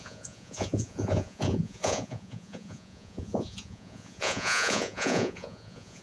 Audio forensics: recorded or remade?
remade